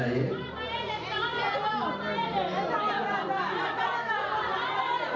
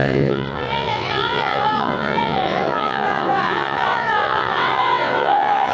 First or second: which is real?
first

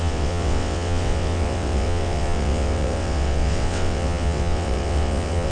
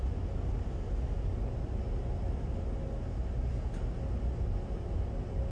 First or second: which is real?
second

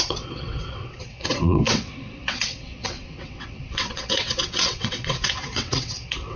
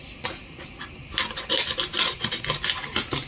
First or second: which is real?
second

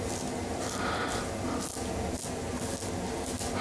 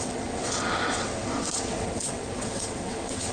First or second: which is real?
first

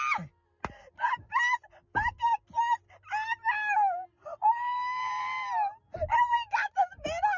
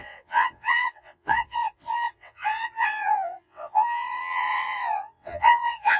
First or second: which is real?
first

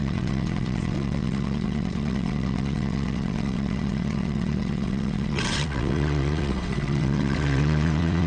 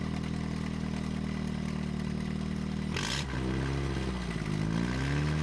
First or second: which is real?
second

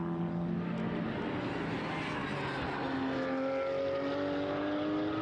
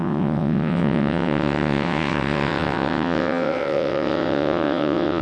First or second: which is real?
first